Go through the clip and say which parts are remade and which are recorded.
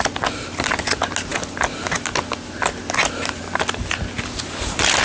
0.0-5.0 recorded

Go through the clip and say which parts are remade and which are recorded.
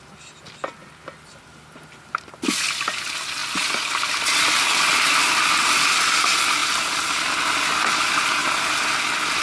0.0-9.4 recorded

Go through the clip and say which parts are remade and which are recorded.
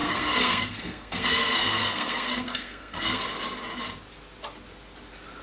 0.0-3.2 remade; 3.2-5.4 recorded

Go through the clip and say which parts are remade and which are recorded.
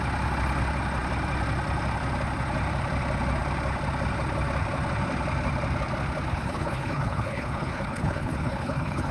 0.0-6.3 recorded; 6.3-9.1 remade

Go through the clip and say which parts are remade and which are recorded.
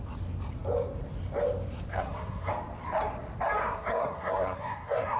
0.0-1.9 recorded; 1.9-2.5 remade; 2.5-3.6 recorded; 3.6-5.2 remade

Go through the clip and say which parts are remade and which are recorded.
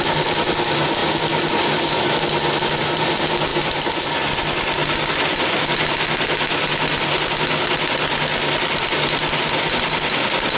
0.0-3.5 recorded; 3.5-4.1 remade; 4.1-10.6 recorded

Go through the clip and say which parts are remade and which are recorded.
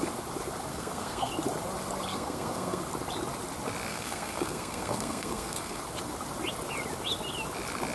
0.0-0.7 recorded; 0.7-1.3 remade; 1.3-2.1 recorded; 2.1-2.8 remade; 2.8-3.9 recorded; 3.9-5.8 remade; 5.8-7.9 recorded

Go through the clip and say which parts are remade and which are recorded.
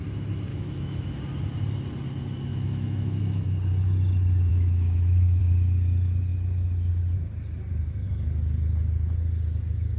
0.0-0.5 recorded; 0.5-1.1 remade; 1.1-2.5 recorded; 2.5-3.2 remade; 3.2-4.5 recorded; 4.5-5.4 remade; 5.4-10.0 recorded